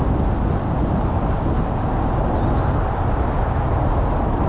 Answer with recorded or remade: recorded